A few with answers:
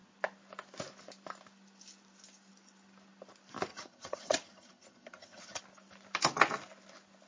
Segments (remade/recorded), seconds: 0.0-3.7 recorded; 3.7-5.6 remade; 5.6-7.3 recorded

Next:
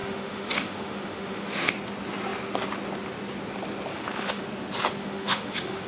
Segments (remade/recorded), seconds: 0.0-1.7 remade; 1.7-3.9 recorded; 3.9-4.4 remade; 4.4-5.0 recorded; 5.0-5.9 remade

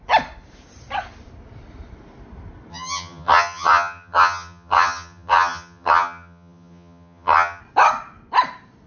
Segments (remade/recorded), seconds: 0.0-2.7 recorded; 2.7-7.6 remade; 7.6-8.9 recorded

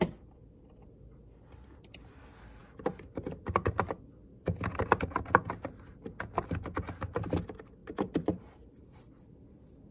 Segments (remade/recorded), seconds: 0.0-7.8 recorded; 7.8-8.8 remade; 8.8-9.9 recorded

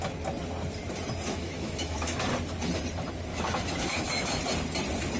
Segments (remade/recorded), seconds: 0.0-1.3 recorded; 1.3-2.2 remade; 2.2-3.3 recorded; 3.3-4.4 remade; 4.4-5.2 recorded

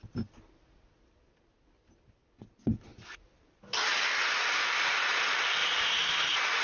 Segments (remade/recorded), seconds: 0.0-5.6 recorded; 5.6-6.6 remade